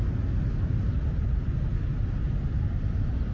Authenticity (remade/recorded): recorded